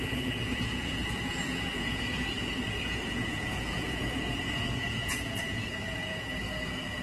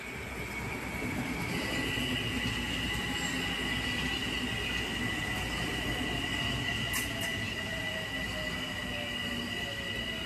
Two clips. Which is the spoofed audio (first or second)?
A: first